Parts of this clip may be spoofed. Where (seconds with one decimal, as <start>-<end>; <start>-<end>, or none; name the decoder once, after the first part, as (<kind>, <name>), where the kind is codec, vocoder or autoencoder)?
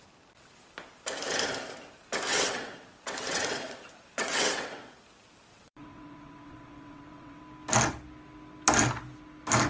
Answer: 2.3-4.9 (vocoder, WaveNeXt); 5.5-7.4